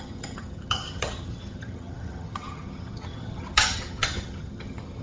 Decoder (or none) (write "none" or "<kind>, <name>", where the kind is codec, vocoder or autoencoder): vocoder, HiFi-GAN